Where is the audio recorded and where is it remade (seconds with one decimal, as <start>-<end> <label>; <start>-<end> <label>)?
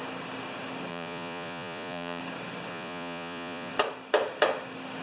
0.0-0.9 recorded; 0.9-2.2 remade; 2.2-2.7 recorded; 2.7-3.7 remade; 3.7-5.0 recorded